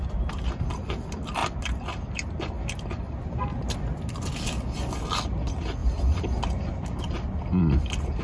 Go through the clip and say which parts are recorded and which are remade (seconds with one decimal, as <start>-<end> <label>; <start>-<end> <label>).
0.0-8.2 recorded